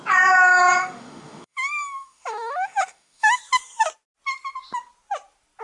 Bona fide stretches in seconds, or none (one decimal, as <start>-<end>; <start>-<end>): 0.0-0.8; 3.4-5.6

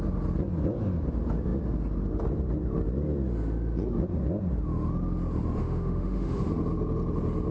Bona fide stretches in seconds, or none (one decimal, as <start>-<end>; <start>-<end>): 0.0-5.6; 6.5-7.5

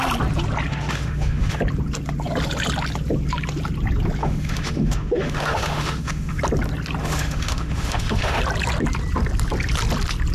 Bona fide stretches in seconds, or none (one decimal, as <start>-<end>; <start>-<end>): 0.0-0.7; 1.6-4.2; 6.4-7.0; 8.4-10.3

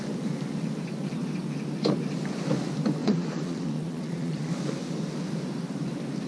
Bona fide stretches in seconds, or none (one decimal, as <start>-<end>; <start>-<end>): 0.0-3.0; 4.5-6.3

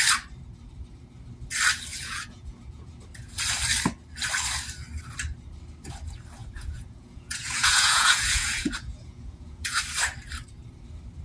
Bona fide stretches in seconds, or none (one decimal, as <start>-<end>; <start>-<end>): 0.0-1.9; 2.9-6.4; 9.8-11.2

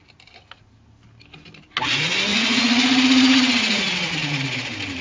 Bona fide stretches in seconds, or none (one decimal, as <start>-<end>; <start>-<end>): 0.0-2.3; 4.0-5.0

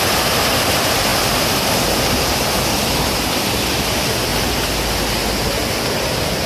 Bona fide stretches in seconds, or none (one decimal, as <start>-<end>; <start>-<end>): 4.3-6.5

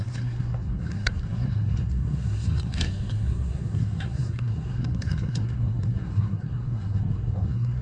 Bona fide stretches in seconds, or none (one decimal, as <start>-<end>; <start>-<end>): none